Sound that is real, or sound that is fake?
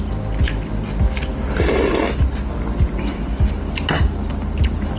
real